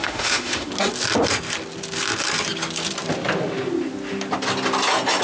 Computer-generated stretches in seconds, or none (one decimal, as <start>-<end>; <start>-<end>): 0.0-0.7